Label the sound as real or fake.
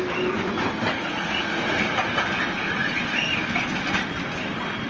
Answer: real